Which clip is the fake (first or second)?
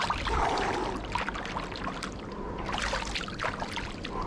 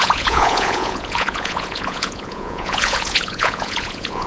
second